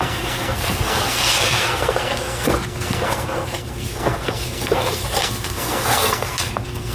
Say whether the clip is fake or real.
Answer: fake